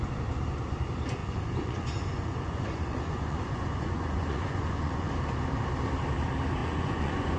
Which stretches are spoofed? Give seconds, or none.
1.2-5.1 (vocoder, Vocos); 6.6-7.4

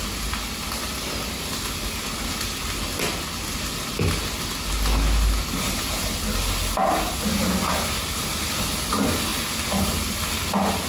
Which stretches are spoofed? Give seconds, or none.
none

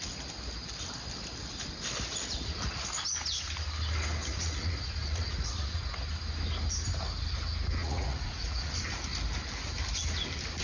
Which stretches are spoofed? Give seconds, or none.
4.3-5.8 (vocoder, Vocos); 7.8-8.7

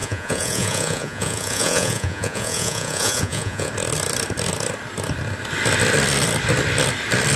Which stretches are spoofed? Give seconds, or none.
0.0-3.7 (vocoder, Vocos)